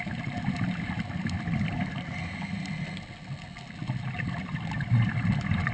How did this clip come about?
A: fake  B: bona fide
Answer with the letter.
B